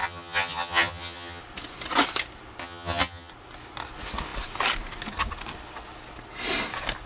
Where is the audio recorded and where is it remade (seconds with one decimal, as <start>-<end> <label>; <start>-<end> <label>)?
0.0-1.4 remade; 1.4-2.6 recorded; 2.6-3.3 remade; 3.3-7.1 recorded